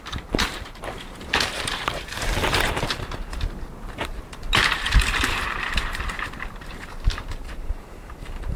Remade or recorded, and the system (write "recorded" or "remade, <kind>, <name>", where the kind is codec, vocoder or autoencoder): remade, vocoder, BigVGAN v2